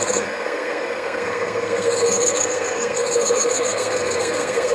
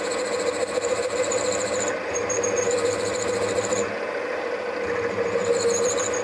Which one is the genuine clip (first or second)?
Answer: second